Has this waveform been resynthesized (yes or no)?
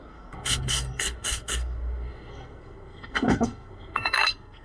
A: yes